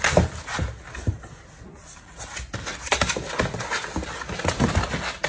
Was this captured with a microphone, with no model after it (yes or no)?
yes